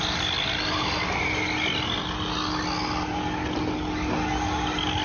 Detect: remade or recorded recorded